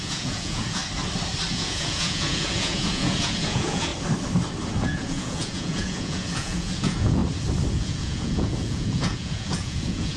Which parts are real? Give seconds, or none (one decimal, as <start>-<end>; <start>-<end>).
0.8-1.5; 3.9-4.8; 7.2-7.7